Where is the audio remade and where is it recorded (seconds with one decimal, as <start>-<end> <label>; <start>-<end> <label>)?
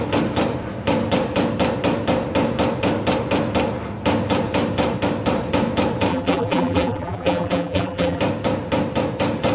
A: 0.0-6.1 recorded; 6.1-8.2 remade; 8.2-9.5 recorded